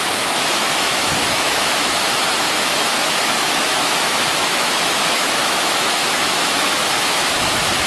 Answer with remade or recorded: remade